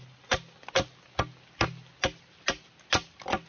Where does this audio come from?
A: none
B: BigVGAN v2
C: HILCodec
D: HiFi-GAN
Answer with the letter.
A